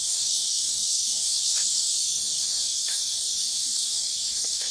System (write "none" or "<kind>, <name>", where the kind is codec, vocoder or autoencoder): codec, DAC